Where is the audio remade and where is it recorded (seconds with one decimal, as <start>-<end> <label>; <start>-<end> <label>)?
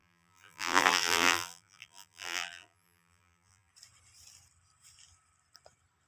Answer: 0.0-3.7 remade; 3.7-6.1 recorded